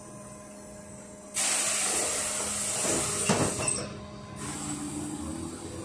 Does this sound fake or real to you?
real